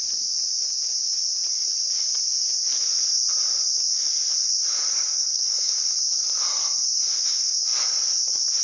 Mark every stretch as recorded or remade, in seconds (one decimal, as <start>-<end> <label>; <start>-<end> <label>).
0.0-4.9 recorded; 4.9-5.7 remade; 5.7-8.6 recorded